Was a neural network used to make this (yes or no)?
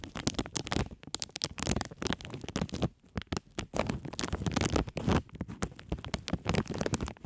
no